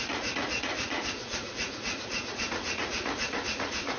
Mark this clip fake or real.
fake